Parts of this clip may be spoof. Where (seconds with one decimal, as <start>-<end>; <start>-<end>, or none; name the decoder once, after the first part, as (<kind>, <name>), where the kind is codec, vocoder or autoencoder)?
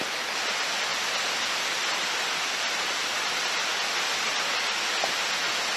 none